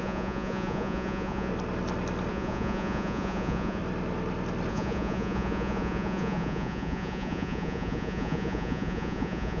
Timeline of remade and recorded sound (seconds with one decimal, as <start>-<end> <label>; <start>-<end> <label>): 0.0-1.5 remade; 1.5-2.3 recorded; 2.3-3.8 remade; 3.8-4.7 recorded; 4.7-9.6 remade